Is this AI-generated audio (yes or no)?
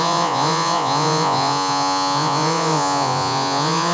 yes